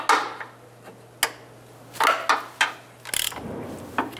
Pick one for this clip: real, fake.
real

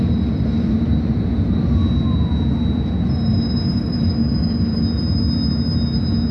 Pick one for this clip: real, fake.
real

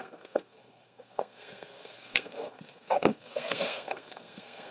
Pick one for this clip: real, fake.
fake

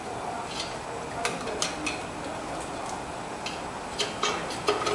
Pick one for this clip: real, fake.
real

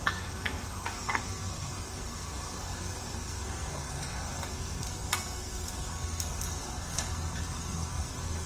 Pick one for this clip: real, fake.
fake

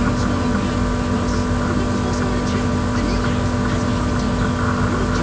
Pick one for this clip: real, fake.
real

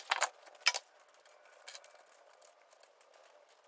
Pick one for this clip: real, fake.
real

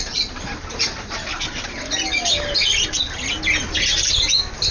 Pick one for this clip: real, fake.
real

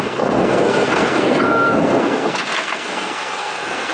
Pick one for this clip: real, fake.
fake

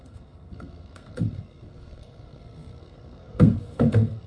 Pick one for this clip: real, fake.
fake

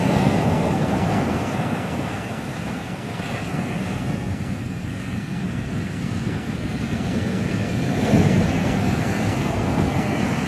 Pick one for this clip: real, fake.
fake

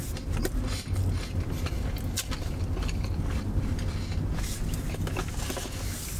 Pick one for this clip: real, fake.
real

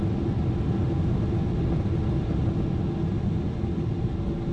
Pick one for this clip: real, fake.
real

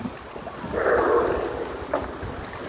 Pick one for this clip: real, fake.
real